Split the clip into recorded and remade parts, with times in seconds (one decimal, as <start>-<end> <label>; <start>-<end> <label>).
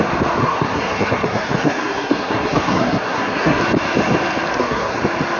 0.0-0.4 recorded; 0.4-3.6 remade; 3.6-4.5 recorded; 4.5-5.0 remade; 5.0-5.4 recorded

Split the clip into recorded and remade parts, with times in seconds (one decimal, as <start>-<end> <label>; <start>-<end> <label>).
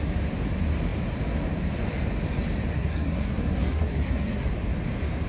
0.0-2.7 recorded; 2.7-4.5 remade; 4.5-5.3 recorded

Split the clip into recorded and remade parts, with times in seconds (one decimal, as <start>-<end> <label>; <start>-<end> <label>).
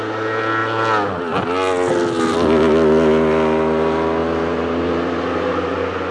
0.0-6.1 recorded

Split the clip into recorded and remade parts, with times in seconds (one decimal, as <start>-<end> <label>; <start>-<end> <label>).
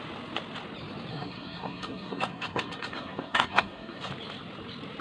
0.0-1.1 recorded; 1.1-4.1 remade; 4.1-5.0 recorded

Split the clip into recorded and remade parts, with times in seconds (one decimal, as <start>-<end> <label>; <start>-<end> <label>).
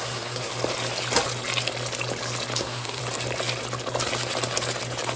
0.0-0.5 remade; 0.5-2.6 recorded; 2.6-3.0 remade; 3.0-5.2 recorded